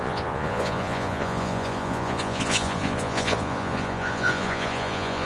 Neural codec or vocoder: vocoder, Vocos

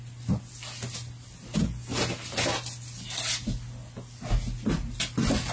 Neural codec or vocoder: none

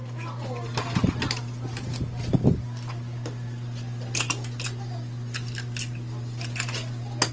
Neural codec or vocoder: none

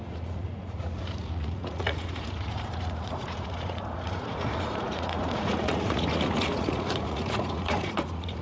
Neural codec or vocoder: vocoder, Vocos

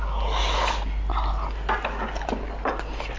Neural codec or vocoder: none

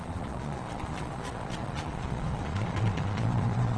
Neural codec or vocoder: vocoder, Vocos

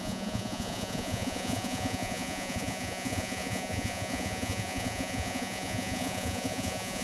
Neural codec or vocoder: vocoder, Vocos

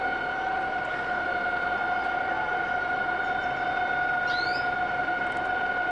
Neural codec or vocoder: none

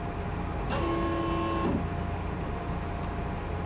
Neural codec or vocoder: none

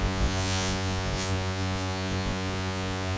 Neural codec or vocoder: vocoder, Vocos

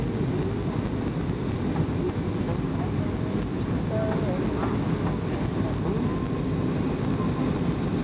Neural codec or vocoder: none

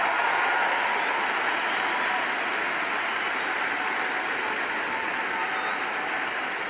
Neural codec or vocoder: none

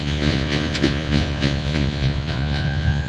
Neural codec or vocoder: vocoder, Vocos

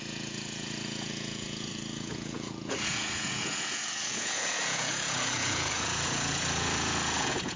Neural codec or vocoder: vocoder, Vocos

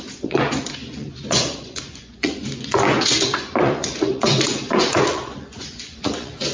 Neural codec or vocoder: vocoder, Vocos